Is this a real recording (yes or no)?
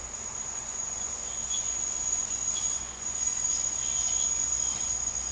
no